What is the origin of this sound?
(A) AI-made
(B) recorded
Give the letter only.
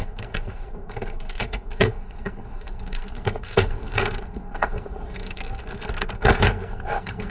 A